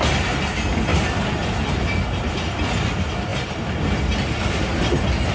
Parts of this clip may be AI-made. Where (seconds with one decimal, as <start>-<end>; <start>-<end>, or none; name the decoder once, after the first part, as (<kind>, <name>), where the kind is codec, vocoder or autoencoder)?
none